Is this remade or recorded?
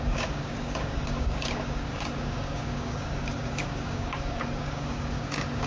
remade